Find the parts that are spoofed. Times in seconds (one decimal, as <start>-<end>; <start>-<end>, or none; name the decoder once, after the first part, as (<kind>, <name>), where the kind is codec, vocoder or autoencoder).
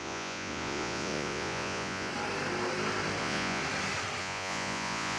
0.0-2.1 (vocoder, Vocos); 3.2-3.6; 4.2-5.2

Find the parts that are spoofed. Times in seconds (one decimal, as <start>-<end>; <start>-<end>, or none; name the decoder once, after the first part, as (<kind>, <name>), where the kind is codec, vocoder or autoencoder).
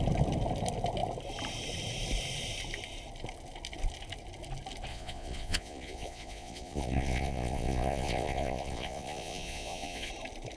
4.9-10.1 (vocoder, Vocos)